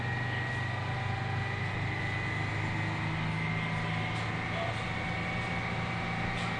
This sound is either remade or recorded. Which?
recorded